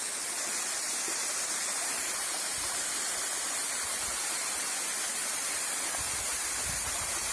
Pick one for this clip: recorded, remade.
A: recorded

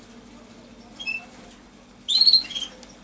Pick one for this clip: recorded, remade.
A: recorded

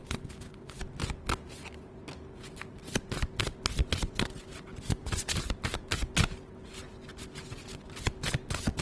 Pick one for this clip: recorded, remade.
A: recorded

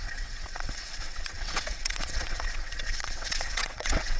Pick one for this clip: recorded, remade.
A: remade